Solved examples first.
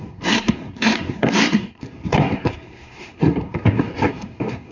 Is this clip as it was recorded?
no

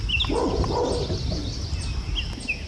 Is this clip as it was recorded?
yes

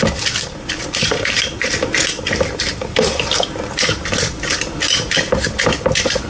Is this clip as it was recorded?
yes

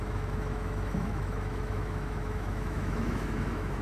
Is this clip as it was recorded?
no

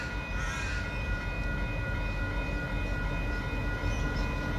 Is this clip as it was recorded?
yes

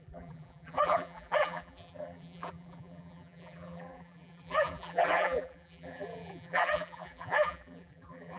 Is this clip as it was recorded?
no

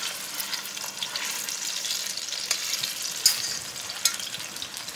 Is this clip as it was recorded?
yes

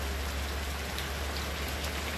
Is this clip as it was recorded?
yes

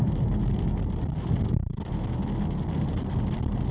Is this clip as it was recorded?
yes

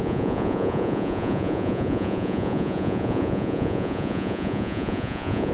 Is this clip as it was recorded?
no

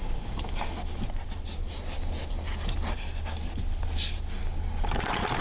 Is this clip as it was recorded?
yes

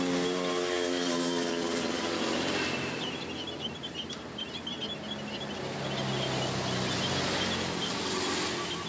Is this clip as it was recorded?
yes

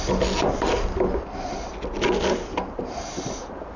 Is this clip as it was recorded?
yes